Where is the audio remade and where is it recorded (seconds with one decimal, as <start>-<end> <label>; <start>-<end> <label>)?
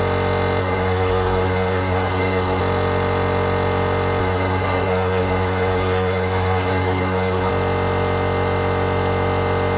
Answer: 0.0-0.6 recorded; 0.6-2.6 remade; 2.6-4.2 recorded; 4.2-7.5 remade; 7.5-9.8 recorded